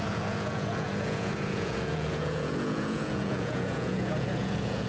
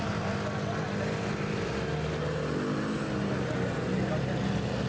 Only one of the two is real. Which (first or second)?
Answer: second